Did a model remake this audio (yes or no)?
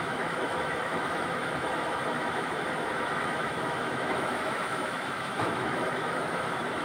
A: yes